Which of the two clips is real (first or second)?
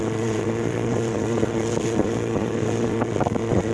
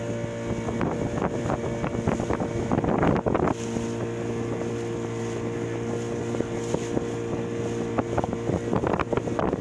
second